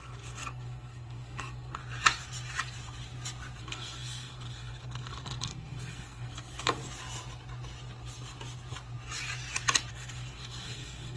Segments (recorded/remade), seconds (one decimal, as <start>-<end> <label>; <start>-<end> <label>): 0.0-1.8 remade; 1.8-3.6 recorded; 3.6-6.8 remade; 6.8-9.9 recorded; 9.9-11.2 remade